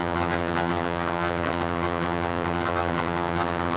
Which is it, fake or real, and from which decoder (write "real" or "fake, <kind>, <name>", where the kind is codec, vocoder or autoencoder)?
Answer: fake, vocoder, HiFi-GAN